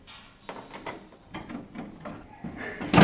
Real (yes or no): yes